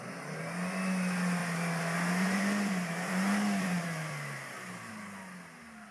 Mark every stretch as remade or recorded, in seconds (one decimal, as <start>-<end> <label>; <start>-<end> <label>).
0.0-1.4 recorded; 1.4-4.9 remade; 4.9-5.9 recorded